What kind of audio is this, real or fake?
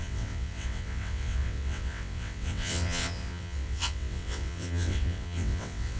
fake